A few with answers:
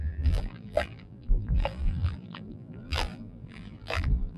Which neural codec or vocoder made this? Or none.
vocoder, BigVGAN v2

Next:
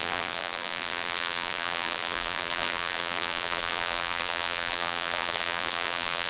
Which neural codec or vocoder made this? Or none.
vocoder, BigVGAN v2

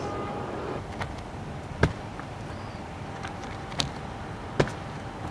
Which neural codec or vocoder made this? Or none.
vocoder, BigVGAN v2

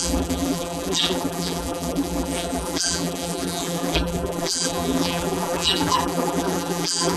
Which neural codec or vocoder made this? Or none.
vocoder, BigVGAN v2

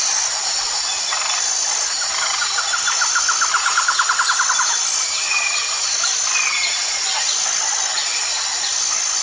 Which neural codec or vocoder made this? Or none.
none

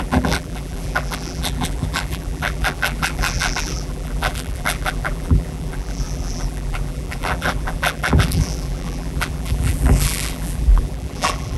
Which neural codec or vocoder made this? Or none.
vocoder, BigVGAN v2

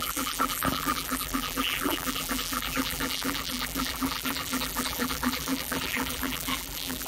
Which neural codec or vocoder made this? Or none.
vocoder, BigVGAN v2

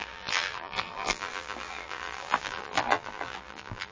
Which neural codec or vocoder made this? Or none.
vocoder, BigVGAN v2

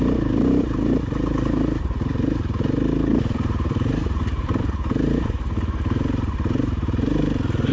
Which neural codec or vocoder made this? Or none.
vocoder, BigVGAN v2